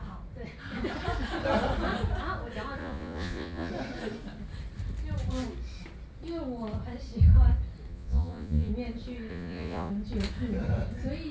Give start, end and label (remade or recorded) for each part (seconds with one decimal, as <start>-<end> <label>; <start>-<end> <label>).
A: 0.0-2.8 recorded; 2.8-3.7 remade; 3.7-7.9 recorded; 7.9-8.7 remade; 8.7-9.3 recorded; 9.3-9.9 remade; 9.9-11.3 recorded